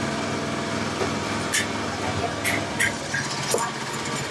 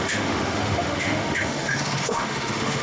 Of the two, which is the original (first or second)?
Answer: first